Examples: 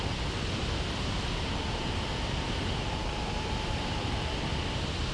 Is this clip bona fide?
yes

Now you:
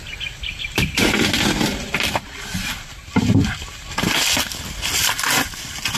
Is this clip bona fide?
yes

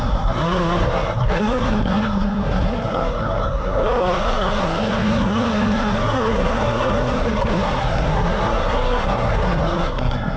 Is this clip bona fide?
no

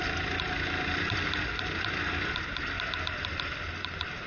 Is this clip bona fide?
yes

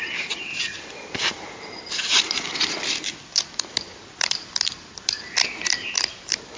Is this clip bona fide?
yes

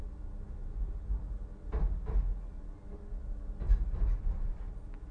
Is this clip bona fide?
yes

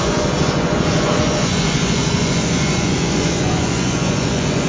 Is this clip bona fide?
no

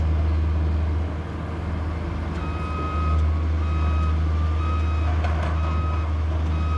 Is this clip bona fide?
yes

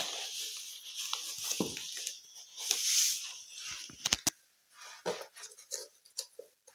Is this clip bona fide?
yes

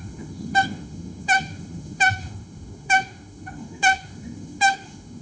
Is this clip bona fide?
no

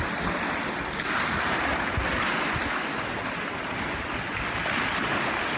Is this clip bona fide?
yes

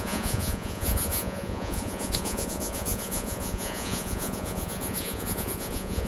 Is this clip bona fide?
no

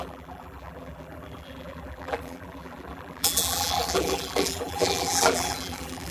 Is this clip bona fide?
no